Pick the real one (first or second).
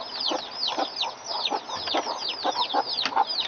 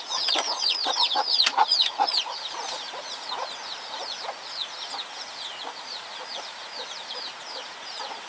first